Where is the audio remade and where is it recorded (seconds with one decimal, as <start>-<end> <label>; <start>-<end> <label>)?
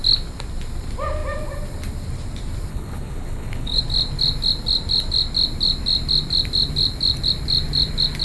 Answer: 0.0-2.7 recorded; 2.7-3.8 remade; 3.8-8.2 recorded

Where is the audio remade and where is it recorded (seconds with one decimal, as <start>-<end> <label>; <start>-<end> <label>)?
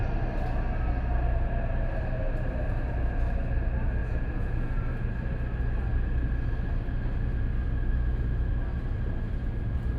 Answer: 0.0-4.0 recorded; 4.0-4.9 remade; 4.9-10.0 recorded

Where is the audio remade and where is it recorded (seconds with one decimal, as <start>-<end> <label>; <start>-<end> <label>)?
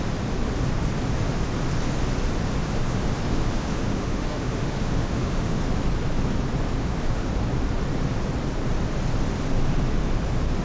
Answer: 0.0-2.6 recorded; 2.6-5.6 remade; 5.6-6.8 recorded; 6.8-7.3 remade; 7.3-10.6 recorded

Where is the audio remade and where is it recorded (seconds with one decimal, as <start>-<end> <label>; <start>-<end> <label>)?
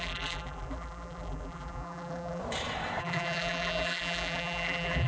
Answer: 0.0-2.4 remade; 2.4-3.0 recorded; 3.0-5.1 remade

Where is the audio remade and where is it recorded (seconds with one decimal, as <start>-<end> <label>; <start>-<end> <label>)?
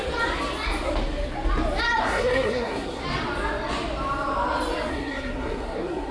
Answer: 0.0-2.0 recorded; 2.0-3.0 remade; 3.0-4.9 recorded; 4.9-6.1 remade